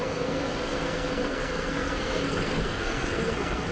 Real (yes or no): no